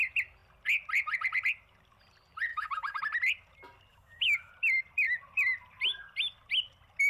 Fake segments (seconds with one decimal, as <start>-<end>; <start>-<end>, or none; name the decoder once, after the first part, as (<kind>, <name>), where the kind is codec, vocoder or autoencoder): 2.5-3.0 (autoencoder, DAC-VAE); 3.9-4.5